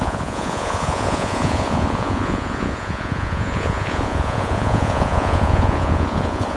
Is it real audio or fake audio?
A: fake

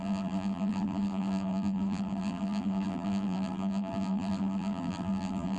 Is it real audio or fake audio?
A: fake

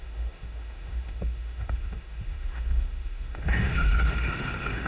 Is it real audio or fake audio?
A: fake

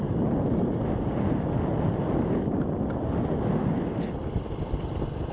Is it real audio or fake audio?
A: real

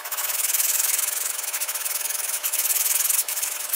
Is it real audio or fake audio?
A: fake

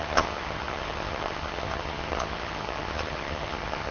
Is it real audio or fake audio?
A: fake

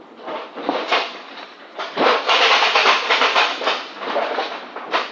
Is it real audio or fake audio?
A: fake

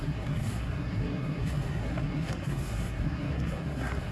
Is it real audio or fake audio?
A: fake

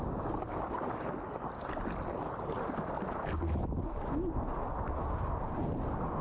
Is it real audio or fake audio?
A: real